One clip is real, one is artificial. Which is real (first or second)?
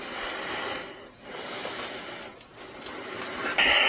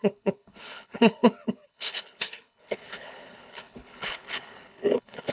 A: first